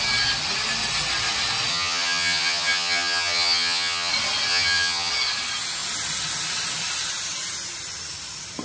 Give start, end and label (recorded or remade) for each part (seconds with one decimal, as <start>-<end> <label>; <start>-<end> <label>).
0.0-1.7 recorded; 1.7-4.1 remade; 4.1-4.5 recorded; 4.5-5.1 remade; 5.1-8.6 recorded